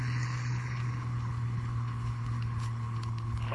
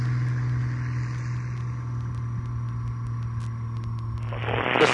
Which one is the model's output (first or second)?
first